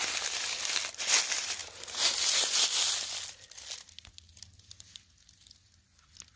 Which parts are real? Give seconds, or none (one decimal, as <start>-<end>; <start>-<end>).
0.0-6.4